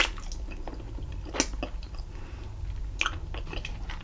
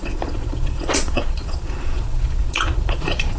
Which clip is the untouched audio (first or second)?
first